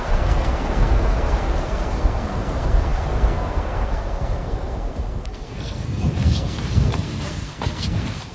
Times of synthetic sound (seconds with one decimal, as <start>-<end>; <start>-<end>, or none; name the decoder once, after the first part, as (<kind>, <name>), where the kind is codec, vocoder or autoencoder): 0.0-8.3 (codec, SNAC)